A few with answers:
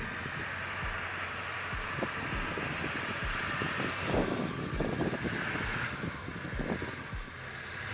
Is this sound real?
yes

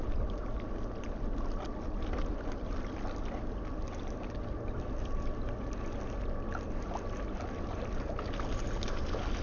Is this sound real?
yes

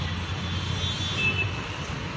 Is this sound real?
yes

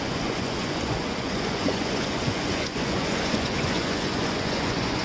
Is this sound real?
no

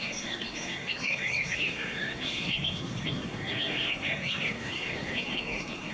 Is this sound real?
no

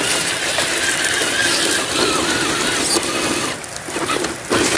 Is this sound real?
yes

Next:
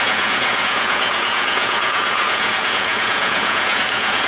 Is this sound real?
no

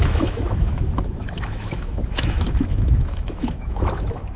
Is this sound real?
no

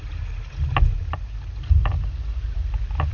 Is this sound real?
yes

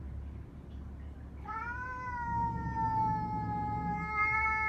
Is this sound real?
yes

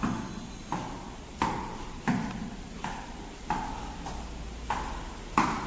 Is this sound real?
yes